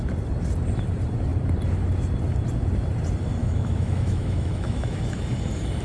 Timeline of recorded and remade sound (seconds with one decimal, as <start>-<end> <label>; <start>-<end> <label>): 0.0-3.4 recorded; 3.4-5.0 remade; 5.0-5.8 recorded